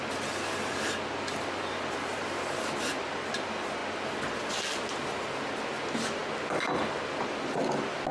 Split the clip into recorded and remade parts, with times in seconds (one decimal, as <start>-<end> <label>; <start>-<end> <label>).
0.0-3.8 recorded; 3.8-4.4 remade; 4.4-8.1 recorded